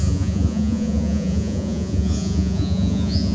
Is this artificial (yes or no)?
yes